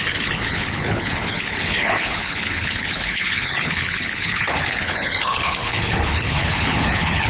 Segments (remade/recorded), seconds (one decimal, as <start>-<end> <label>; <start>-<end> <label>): 0.0-7.3 remade